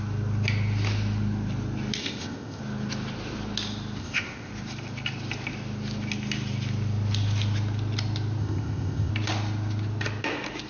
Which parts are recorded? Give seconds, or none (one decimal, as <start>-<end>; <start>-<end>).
0.0-2.0; 2.6-4.0; 4.5-8.4; 9.1-10.7